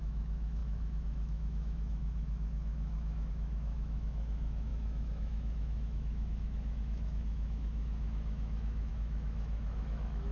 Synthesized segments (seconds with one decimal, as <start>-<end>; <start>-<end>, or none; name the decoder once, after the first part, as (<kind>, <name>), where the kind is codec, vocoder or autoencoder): 0.0-10.3 (autoencoder, DAC-VAE)